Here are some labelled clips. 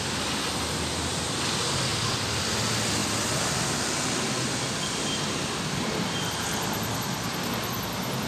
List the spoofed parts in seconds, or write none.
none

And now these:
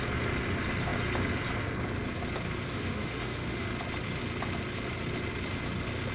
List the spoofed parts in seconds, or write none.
2.7-3.7 (autoencoder, DAC-VAE)

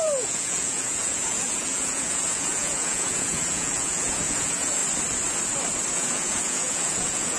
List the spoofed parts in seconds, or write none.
0.0-4.8 (vocoder, Vocos); 5.9-7.4

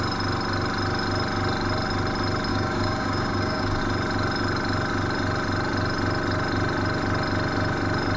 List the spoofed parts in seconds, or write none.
2.5-3.8 (codec, DAC)

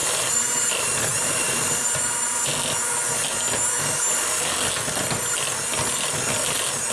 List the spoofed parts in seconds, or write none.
0.0-2.5 (vocoder, BigVGAN v2)

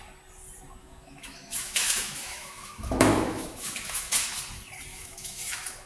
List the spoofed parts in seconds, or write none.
0.8-4.3 (autoencoder, DAC-VAE); 4.9-5.9

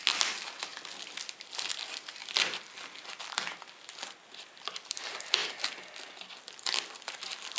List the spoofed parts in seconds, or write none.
none

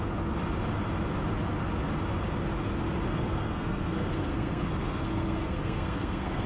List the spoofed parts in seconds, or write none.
3.1-6.5 (codec, SNAC)